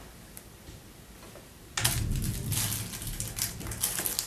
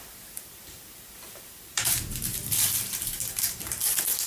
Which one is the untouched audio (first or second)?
first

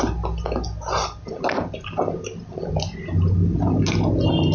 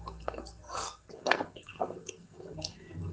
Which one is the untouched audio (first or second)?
first